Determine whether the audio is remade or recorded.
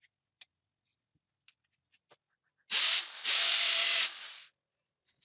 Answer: recorded